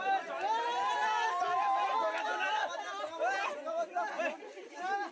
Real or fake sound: real